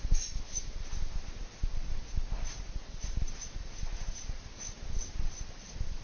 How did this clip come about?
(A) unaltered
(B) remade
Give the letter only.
A